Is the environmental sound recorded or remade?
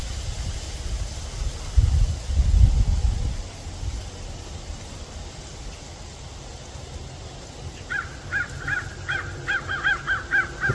recorded